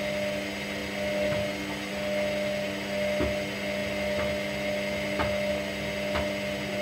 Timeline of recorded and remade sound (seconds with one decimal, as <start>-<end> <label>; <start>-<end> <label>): 0.0-6.8 recorded